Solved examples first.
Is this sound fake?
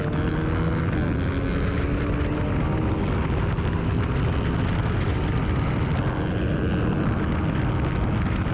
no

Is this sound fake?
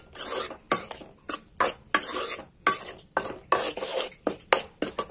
no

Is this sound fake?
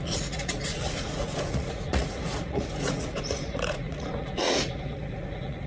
yes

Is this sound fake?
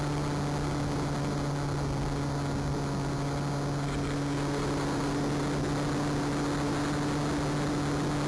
no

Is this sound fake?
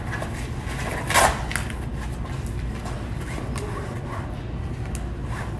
no